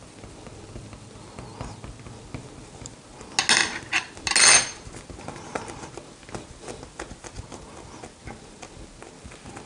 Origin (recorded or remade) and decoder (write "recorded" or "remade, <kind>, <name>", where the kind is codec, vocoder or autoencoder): recorded